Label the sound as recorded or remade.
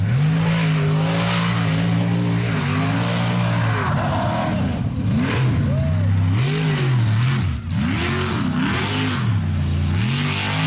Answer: recorded